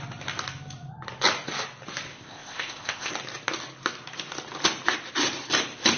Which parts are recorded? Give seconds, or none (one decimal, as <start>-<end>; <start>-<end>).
0.0-2.1; 3.1-6.0